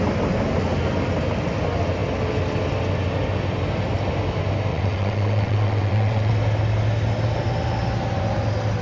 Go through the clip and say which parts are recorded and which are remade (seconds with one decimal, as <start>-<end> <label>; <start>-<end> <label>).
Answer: 0.0-4.7 recorded; 4.7-6.3 remade; 6.3-8.8 recorded